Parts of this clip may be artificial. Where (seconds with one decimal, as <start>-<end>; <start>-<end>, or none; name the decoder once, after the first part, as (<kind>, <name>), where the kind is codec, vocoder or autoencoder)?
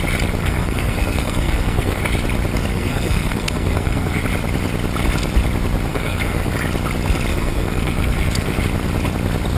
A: 0.4-2.0 (codec, SNAC); 2.7-4.2; 5.9-6.5; 7.3-8.6